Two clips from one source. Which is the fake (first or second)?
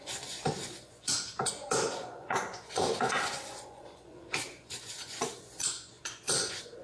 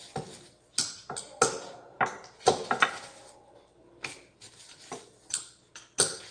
first